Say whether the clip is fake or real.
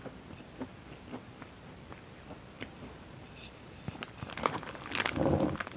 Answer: real